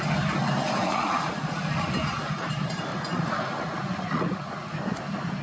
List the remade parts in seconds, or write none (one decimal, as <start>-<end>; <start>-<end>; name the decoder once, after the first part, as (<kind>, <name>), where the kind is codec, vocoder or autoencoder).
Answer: 0.8-1.9 (vocoder, Vocos); 2.9-4.8